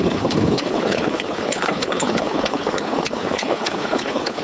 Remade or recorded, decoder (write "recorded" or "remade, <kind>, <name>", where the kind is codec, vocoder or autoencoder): remade, codec, HILCodec